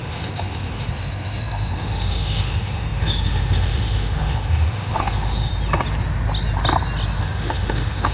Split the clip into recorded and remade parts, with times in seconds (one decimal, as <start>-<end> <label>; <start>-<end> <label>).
0.0-5.5 remade; 5.5-7.2 recorded; 7.2-8.1 remade